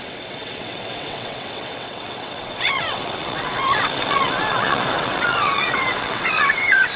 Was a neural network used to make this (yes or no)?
yes